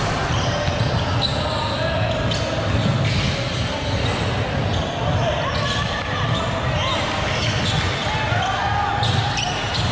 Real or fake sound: real